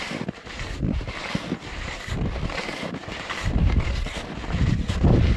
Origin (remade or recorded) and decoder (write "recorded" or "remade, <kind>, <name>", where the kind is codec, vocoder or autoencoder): recorded